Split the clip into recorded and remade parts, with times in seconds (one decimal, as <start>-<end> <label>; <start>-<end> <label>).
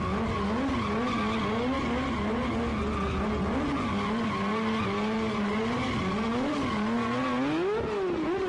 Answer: 0.0-8.5 recorded